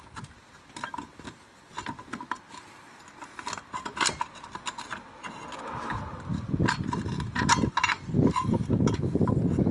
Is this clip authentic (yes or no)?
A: yes